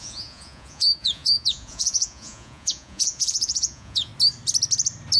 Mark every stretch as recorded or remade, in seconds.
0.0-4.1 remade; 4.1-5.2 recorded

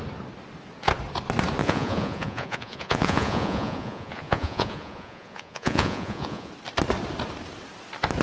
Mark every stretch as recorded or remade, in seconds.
0.0-1.6 recorded; 1.6-6.5 remade; 6.5-8.2 recorded

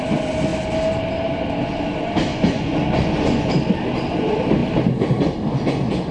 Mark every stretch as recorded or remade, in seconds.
0.0-2.3 recorded; 2.3-3.5 remade; 3.5-6.1 recorded

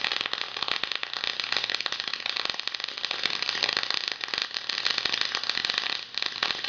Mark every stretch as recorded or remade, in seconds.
0.0-6.7 recorded

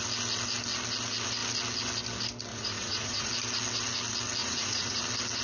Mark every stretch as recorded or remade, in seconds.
0.0-2.5 recorded; 2.5-3.3 remade; 3.3-4.4 recorded; 4.4-5.0 remade; 5.0-5.4 recorded

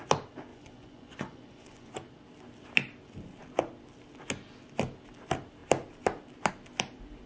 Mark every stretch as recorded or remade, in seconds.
0.0-0.5 recorded; 0.5-1.9 remade; 1.9-7.3 recorded

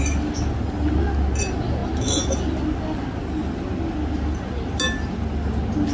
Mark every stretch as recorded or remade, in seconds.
0.0-5.9 recorded

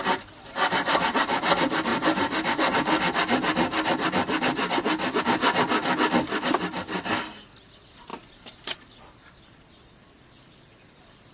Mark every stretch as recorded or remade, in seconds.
0.0-11.3 recorded